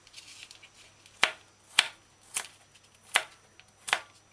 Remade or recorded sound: recorded